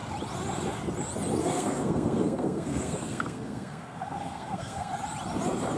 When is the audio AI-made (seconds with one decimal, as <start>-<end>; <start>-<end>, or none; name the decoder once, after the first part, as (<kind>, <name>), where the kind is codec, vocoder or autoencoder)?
1.4-4.9 (codec, SNAC)